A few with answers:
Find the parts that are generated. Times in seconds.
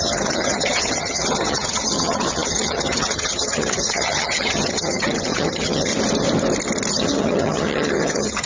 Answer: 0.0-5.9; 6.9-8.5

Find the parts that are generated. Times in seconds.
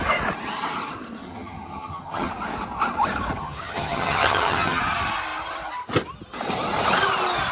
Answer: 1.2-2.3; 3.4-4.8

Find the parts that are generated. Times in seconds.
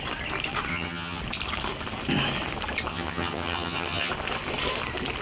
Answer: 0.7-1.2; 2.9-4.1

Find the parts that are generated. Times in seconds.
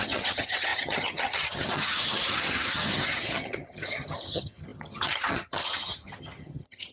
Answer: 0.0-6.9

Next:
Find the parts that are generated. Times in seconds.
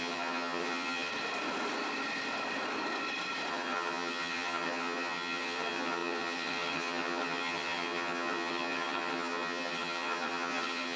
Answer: 0.0-1.1; 3.5-11.0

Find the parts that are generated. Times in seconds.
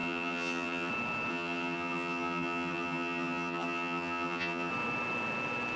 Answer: 0.0-0.9; 1.3-4.7